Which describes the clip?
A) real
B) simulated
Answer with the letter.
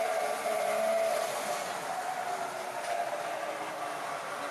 A